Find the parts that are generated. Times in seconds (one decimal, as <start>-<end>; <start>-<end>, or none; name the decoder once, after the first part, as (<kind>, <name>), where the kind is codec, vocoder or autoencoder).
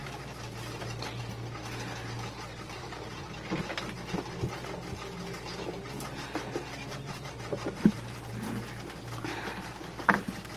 6.9-8.3 (vocoder, BigVGAN v2)